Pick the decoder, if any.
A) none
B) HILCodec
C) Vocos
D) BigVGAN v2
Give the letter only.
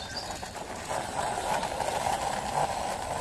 A